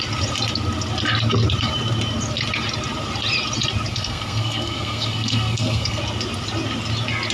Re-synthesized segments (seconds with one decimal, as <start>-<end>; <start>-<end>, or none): 3.9-6.0